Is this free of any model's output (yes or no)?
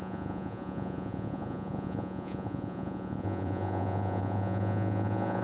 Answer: no